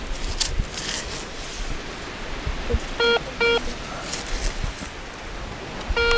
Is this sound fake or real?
real